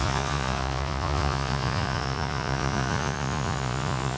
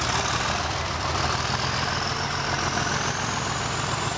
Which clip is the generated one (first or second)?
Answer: first